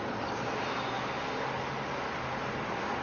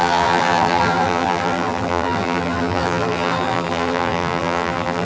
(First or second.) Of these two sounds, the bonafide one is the first